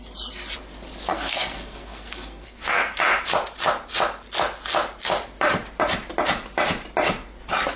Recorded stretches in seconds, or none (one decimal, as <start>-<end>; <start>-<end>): 0.0-1.1; 3.0-7.8